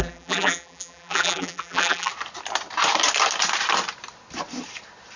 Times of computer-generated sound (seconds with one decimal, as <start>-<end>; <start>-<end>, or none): 0.0-2.1